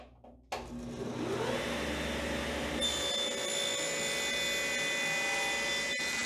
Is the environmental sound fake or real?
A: real